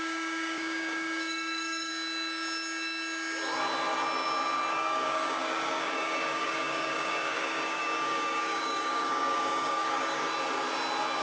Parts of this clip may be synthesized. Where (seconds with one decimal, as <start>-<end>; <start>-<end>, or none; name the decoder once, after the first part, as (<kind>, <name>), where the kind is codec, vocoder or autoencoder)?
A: 0.0-1.9 (codec, DAC); 4.7-10.3